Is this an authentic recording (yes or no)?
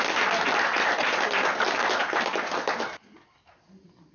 yes